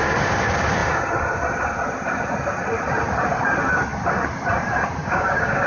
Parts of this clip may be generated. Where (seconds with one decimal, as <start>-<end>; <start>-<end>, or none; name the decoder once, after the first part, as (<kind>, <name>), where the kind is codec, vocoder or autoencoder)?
5.0-5.7 (codec, DAC)